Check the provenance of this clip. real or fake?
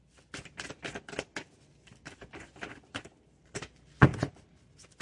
fake